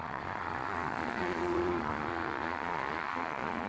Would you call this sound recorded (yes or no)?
no